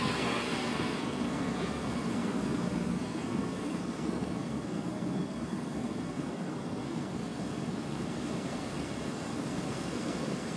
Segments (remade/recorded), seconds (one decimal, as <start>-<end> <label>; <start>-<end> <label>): 0.0-10.6 remade

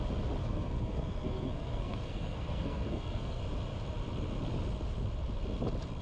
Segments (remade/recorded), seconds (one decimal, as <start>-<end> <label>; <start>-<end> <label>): 0.0-0.4 recorded; 0.4-3.4 remade; 3.4-6.0 recorded

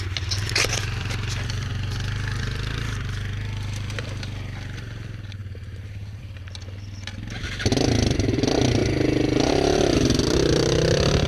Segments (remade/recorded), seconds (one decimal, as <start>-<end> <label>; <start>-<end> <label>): 0.0-1.7 remade; 1.7-2.4 recorded; 2.4-5.4 remade; 5.4-6.2 recorded; 6.2-8.8 remade; 8.8-9.5 recorded; 9.5-11.3 remade

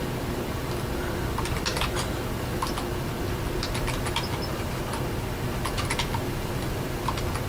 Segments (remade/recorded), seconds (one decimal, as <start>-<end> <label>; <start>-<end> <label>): 0.0-7.5 recorded

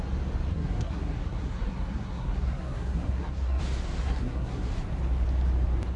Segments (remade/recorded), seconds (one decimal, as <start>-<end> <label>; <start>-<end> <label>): 0.0-0.5 recorded; 0.5-3.6 remade; 3.6-4.0 recorded; 4.0-4.7 remade; 4.7-6.0 recorded

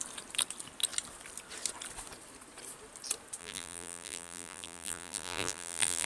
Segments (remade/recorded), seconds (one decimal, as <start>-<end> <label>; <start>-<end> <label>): 0.0-3.4 recorded; 3.4-6.1 remade

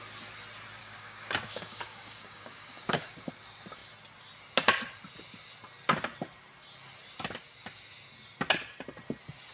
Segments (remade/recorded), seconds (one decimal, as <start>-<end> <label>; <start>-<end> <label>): 0.0-0.8 recorded; 0.8-3.3 remade; 3.3-9.5 recorded

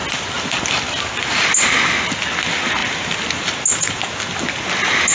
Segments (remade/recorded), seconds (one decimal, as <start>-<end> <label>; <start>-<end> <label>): 0.0-5.1 recorded